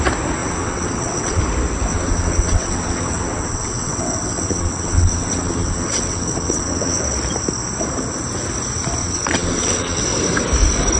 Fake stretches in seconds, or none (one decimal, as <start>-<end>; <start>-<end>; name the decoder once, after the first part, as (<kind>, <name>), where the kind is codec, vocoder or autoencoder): 0.4-1.4 (vocoder, WaveNeXt); 1.9-7.0; 9.0-10.0